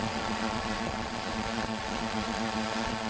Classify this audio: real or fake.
fake